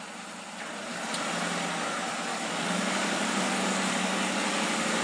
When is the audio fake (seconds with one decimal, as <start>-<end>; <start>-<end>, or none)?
2.3-5.0